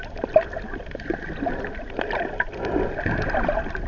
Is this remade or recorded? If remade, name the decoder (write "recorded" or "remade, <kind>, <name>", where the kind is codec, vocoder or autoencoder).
recorded